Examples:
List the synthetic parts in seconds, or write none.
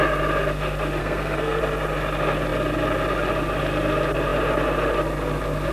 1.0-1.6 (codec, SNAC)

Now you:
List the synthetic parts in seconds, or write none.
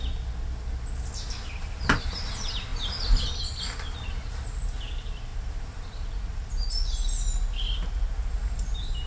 none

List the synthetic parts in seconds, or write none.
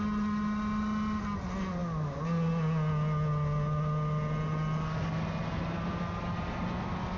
none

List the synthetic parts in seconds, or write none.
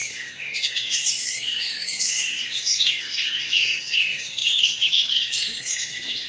0.0-6.3 (codec, SNAC)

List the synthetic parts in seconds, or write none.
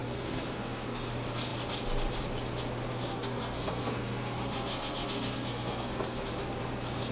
0.0-1.1 (codec, SNAC); 2.9-6.3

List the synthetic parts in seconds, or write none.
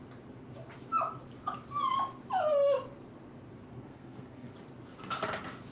3.7-4.5 (codec, SNAC)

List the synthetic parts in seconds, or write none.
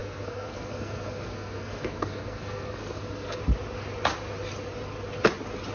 0.0-3.4 (codec, SNAC)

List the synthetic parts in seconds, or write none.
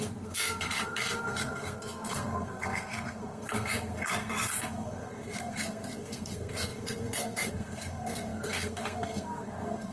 0.0-9.9 (codec, SNAC)